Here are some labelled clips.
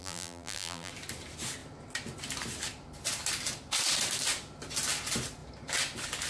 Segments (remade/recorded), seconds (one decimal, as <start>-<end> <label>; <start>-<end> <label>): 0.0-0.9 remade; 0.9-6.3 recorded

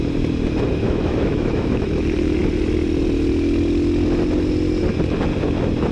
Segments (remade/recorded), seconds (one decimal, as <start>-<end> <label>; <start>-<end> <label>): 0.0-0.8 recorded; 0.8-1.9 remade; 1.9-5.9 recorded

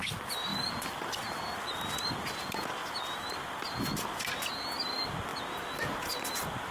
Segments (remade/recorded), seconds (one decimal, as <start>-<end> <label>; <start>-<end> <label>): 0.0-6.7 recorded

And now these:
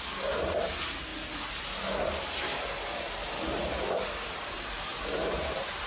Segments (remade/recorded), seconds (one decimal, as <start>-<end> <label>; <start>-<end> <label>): 0.0-1.1 remade; 1.1-4.5 recorded; 4.5-5.9 remade